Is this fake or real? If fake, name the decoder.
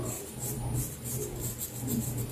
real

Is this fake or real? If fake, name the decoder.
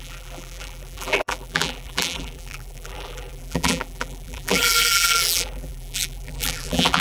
fake, vocoder, BigVGAN v2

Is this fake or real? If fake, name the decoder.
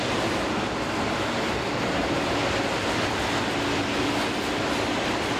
real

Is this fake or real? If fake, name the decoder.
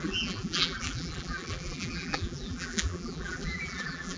fake, vocoder, BigVGAN v2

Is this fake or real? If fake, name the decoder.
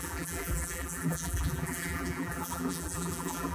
fake, vocoder, BigVGAN v2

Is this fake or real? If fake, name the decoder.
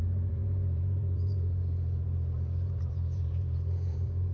fake, vocoder, BigVGAN v2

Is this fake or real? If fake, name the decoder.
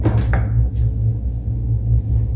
real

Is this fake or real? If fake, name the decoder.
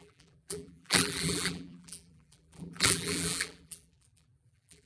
fake, vocoder, BigVGAN v2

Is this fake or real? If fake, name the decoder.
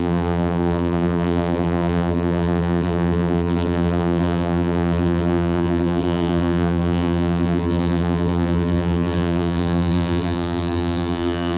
fake, vocoder, BigVGAN v2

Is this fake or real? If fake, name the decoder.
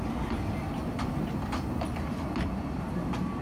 real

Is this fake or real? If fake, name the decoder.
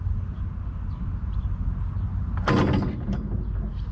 real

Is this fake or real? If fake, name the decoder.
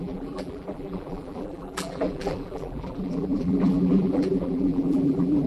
fake, vocoder, BigVGAN v2